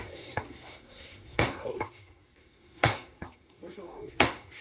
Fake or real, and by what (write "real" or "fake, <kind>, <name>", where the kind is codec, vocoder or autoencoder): fake, codec, SNAC